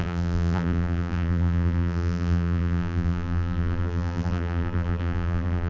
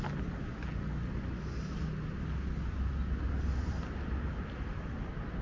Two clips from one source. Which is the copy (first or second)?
first